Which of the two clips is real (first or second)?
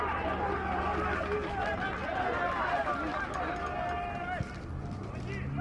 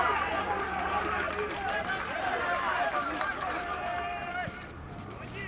first